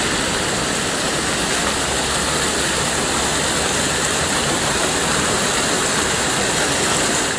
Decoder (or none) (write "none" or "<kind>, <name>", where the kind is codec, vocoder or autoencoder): none